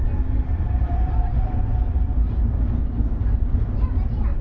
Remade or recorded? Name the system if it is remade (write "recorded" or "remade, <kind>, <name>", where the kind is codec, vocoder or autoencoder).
recorded